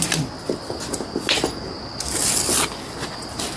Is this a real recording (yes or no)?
yes